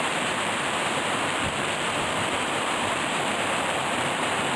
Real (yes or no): no